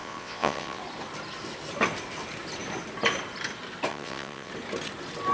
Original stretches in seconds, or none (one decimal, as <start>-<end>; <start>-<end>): 0.8-3.9; 4.5-5.3